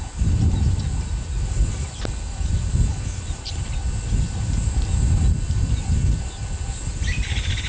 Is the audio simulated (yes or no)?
no